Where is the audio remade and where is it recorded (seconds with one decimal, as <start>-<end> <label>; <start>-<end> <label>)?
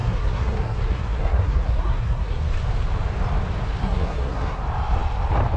0.0-2.4 remade; 2.4-3.8 recorded; 3.8-4.6 remade; 4.6-5.6 recorded